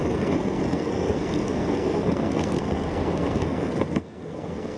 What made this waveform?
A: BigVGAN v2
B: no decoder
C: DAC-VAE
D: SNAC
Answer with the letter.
D